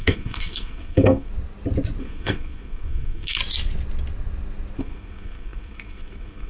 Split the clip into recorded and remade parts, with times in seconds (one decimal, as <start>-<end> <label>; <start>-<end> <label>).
0.0-1.3 remade; 1.3-2.0 recorded; 2.0-3.4 remade; 3.4-4.8 recorded; 4.8-6.5 remade